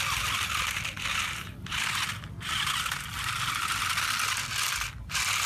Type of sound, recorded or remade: recorded